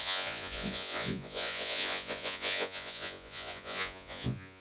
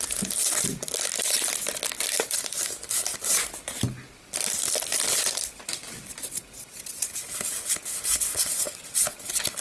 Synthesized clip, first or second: first